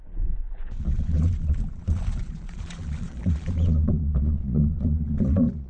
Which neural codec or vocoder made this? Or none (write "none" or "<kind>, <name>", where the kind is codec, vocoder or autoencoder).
vocoder, Vocos